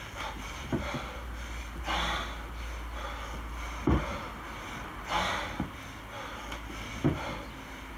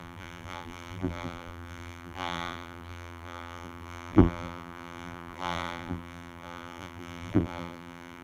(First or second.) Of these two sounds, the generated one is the second